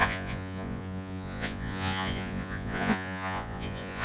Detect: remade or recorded remade